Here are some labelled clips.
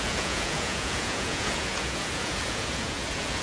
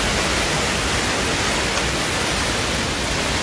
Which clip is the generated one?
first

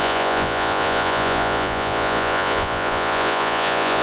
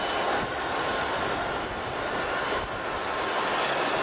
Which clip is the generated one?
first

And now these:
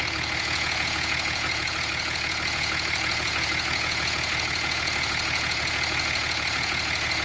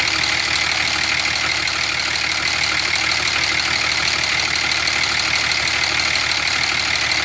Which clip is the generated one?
first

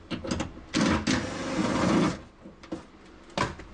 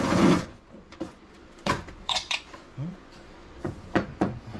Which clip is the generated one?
second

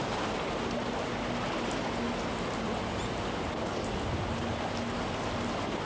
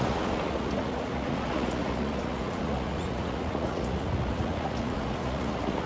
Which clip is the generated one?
second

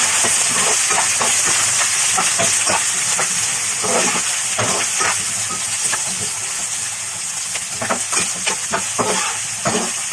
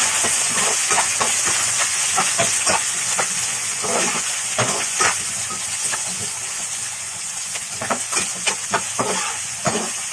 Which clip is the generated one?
second